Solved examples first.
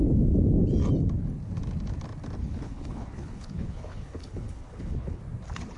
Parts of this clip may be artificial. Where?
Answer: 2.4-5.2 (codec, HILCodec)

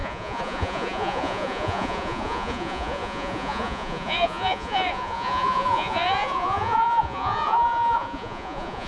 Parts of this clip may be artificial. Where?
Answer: 0.0-8.9 (vocoder, Vocos)

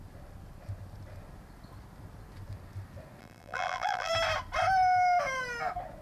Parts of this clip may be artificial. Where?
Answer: 3.2-4.1 (vocoder, BigVGAN v2)

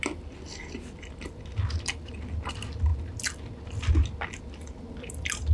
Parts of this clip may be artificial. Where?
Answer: none

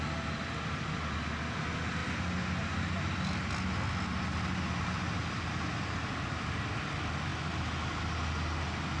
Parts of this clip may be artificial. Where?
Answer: none

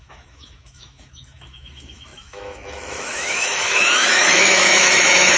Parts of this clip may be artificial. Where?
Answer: 0.0-5.4 (autoencoder, DAC-VAE)

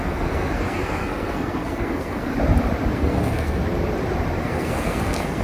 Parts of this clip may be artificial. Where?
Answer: 0.0-2.3 (codec, SNAC); 2.9-3.6; 4.4-5.4

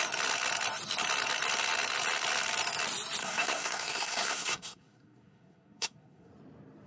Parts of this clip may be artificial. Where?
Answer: 3.2-6.3 (codec, SNAC)